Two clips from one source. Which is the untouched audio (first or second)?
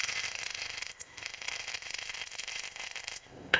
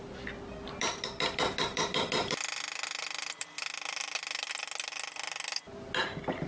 second